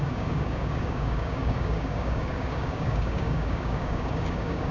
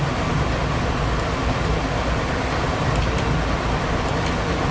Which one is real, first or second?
second